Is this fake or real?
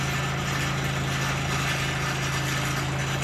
real